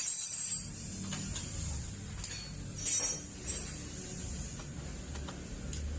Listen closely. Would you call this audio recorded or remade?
recorded